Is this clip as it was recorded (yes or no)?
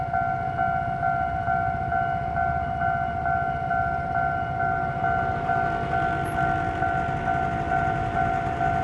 yes